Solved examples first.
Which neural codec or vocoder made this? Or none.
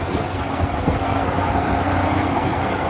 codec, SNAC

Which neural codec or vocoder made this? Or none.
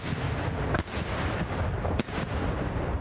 none